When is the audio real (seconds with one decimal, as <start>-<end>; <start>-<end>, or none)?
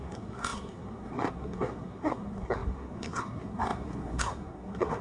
none